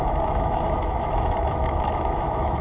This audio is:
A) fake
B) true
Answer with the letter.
A